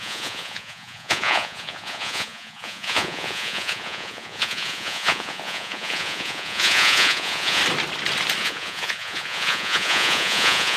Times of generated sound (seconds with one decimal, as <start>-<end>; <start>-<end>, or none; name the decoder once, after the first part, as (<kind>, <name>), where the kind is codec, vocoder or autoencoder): 0.0-7.6 (vocoder, Vocos); 8.4-10.8